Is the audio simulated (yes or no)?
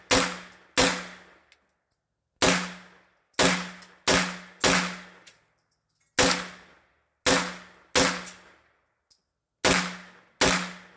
no